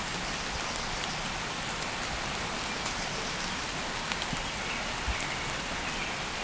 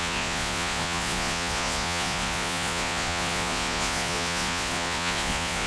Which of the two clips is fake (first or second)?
second